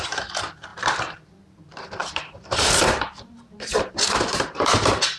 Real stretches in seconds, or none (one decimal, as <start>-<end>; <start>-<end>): none